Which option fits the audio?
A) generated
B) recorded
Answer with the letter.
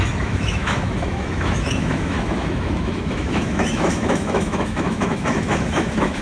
A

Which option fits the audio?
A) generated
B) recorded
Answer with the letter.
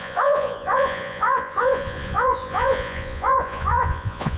A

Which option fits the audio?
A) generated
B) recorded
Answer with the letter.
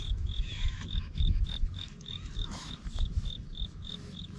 A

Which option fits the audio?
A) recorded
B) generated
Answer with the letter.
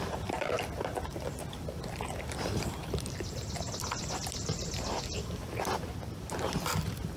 B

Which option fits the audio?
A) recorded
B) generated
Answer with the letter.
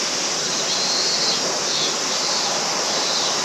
A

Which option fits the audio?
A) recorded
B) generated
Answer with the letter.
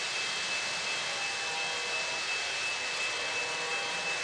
A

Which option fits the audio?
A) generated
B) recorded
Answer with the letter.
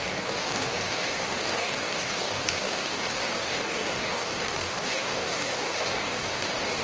A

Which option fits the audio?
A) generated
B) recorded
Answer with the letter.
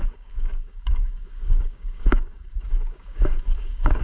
A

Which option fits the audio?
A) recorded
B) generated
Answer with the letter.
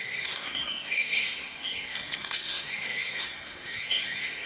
B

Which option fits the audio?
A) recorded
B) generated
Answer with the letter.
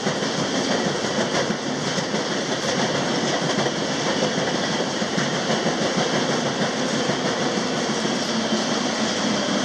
A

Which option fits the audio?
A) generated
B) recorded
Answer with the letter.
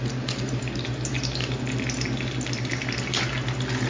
B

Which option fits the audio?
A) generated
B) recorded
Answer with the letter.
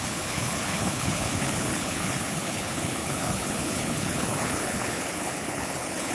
A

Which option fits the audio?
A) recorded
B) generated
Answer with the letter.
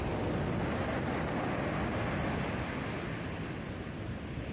A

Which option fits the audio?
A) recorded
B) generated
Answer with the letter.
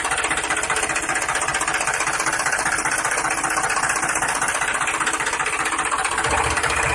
B